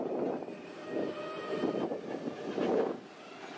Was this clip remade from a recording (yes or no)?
no